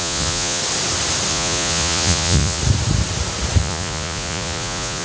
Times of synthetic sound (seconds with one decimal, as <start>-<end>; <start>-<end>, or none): 0.0-0.6; 1.3-2.6; 3.6-5.0